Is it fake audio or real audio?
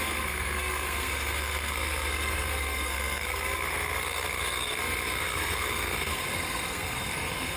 fake